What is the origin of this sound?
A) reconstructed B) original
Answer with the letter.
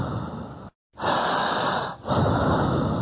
B